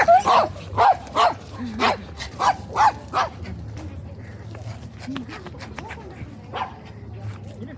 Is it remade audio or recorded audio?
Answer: recorded